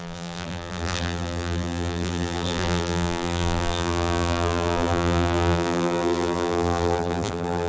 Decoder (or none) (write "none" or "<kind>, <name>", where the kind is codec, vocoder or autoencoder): vocoder, BigVGAN v2